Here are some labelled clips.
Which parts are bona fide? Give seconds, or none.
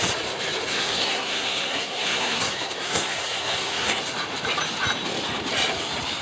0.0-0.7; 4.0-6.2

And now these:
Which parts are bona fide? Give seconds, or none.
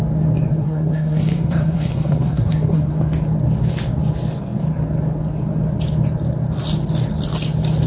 0.0-0.5; 2.9-7.9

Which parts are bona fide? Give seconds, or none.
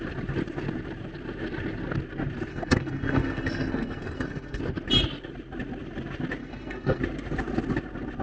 0.0-2.5; 4.6-6.4; 7.0-8.2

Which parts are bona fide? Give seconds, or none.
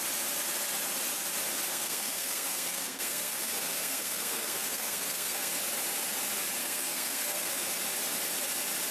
0.0-1.7; 5.5-6.6; 7.7-8.9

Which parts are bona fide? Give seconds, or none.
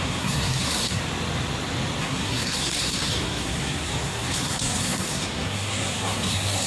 1.0-2.0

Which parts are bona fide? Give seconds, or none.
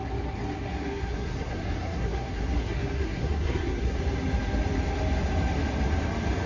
0.0-0.6; 4.0-6.5